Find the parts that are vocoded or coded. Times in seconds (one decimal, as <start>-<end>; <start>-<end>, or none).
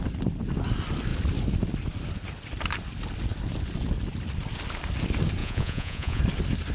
5.4-6.2